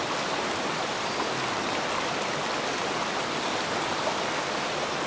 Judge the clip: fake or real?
real